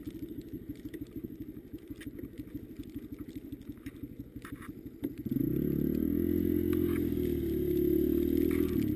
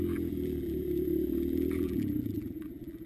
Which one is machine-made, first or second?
second